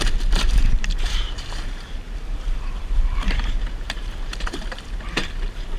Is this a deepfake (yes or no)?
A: yes